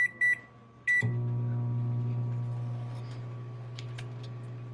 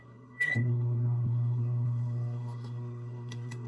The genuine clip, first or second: first